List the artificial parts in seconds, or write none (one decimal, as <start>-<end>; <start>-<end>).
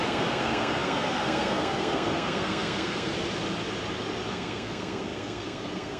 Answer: 0.0-3.1; 4.3-6.0